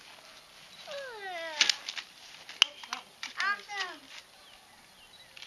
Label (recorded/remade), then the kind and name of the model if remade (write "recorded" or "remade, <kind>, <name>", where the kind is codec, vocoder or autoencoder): recorded